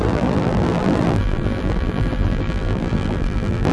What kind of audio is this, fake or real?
fake